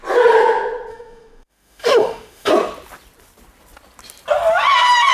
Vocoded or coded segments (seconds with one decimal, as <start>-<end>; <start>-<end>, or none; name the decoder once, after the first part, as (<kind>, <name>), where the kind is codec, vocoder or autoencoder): 0.9-2.5 (autoencoder, DAC-VAE)